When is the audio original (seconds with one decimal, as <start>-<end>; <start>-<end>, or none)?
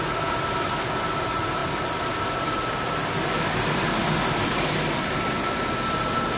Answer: 0.0-6.4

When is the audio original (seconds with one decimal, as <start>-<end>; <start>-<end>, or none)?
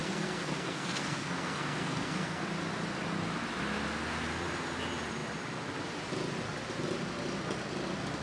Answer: 2.4-8.2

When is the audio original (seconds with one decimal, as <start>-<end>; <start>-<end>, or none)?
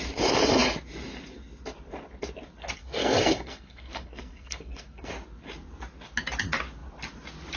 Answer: 0.0-2.8; 5.1-7.6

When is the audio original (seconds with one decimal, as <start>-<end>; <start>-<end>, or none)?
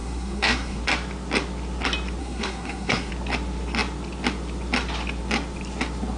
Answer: 0.8-2.2; 3.1-6.2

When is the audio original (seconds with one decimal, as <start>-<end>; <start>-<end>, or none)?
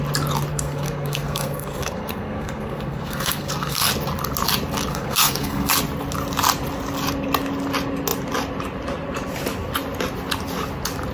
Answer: 0.0-0.5; 3.9-4.9; 5.7-11.1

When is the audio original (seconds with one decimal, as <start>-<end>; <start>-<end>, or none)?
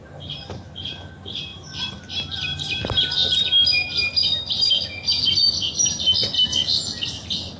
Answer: 0.0-7.6